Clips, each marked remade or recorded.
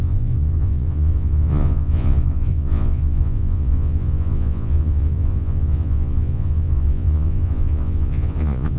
remade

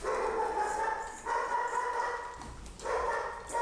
recorded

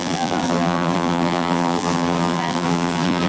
remade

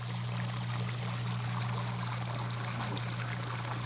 recorded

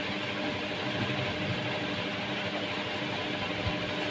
recorded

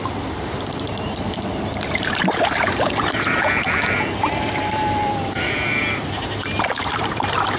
remade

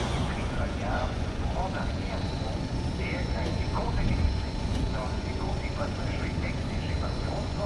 remade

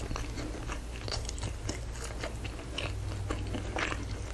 recorded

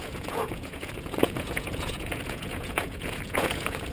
remade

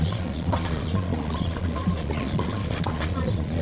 remade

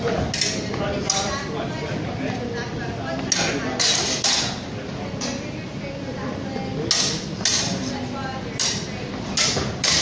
recorded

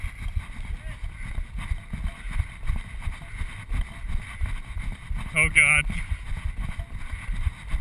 recorded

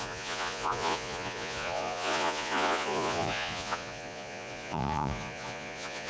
remade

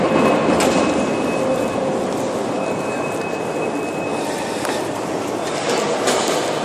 recorded